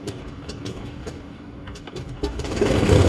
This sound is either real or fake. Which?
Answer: fake